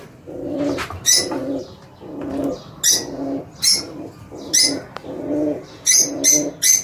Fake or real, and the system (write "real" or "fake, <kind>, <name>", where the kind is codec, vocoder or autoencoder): real